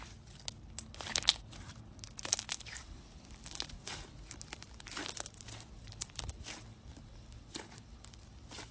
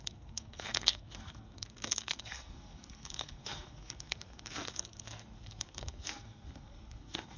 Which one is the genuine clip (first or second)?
first